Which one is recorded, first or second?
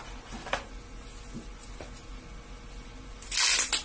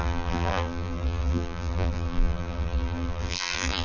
first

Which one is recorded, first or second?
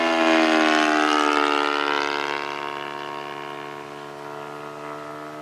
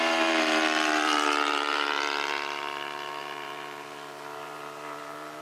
first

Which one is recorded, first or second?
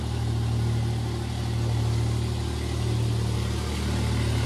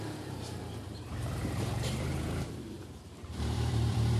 first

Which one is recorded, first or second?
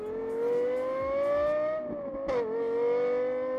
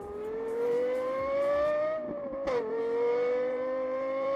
first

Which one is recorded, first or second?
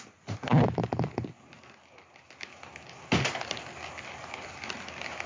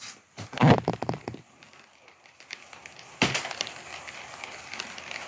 first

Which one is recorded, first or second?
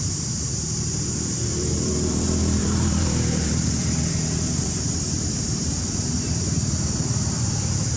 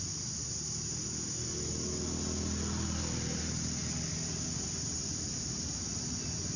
second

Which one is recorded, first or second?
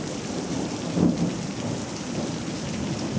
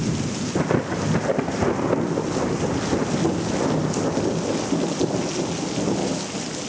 second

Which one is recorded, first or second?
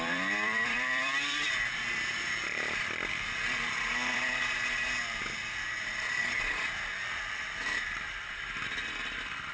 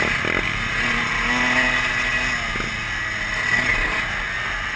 second